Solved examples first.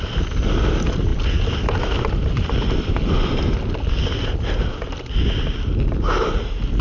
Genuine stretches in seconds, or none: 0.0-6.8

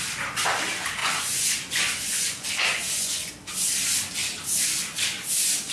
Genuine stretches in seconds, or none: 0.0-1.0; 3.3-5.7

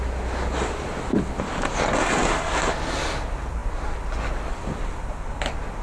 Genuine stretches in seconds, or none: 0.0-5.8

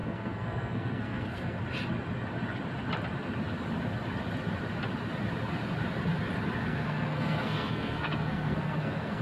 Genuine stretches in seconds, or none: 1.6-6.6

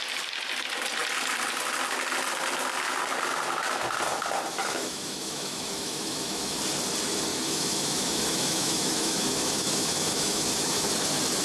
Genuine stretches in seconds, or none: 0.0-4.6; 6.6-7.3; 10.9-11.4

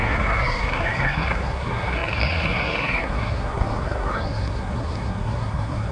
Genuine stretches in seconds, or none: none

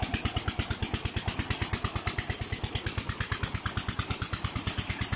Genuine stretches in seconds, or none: 0.8-3.9

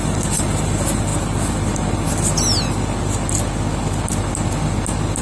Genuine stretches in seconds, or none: 0.0-5.2